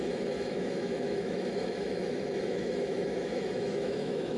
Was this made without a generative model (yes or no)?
no